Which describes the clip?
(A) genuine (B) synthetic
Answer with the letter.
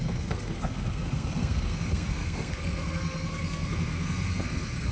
B